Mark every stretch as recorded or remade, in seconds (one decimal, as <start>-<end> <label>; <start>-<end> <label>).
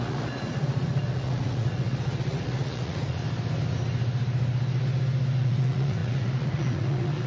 0.0-3.2 remade; 3.2-5.4 recorded; 5.4-7.3 remade